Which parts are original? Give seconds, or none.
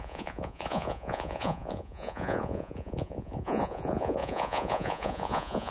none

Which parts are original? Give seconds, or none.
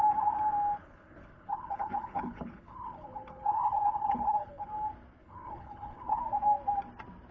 0.0-0.8; 4.7-5.2; 6.2-7.3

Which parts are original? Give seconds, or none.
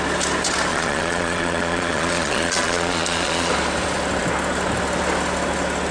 0.0-0.7; 3.5-5.9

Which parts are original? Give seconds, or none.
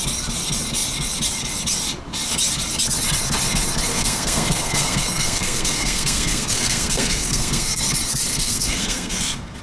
0.0-3.9; 7.8-8.3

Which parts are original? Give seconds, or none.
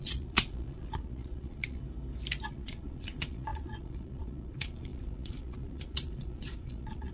1.8-2.5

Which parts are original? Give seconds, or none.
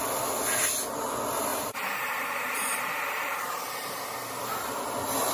0.0-1.5; 4.7-5.3